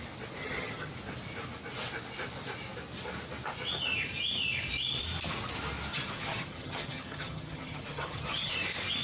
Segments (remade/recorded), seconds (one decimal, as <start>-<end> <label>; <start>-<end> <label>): 0.0-0.4 recorded; 0.4-0.9 remade; 0.9-5.9 recorded; 5.9-8.5 remade; 8.5-9.0 recorded